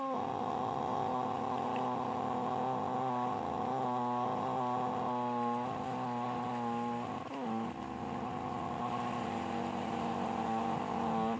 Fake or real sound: real